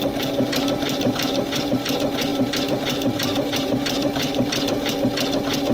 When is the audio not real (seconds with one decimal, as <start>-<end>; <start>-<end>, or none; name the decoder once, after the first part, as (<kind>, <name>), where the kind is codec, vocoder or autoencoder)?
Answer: 0.0-1.9 (vocoder, BigVGAN v2); 2.3-4.9